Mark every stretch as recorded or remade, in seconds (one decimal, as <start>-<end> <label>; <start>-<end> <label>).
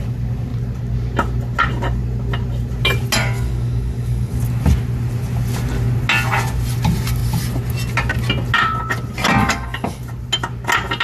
0.0-3.2 recorded; 3.2-4.4 remade; 4.4-9.4 recorded; 9.4-10.0 remade; 10.0-11.0 recorded